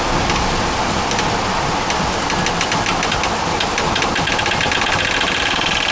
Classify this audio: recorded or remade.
recorded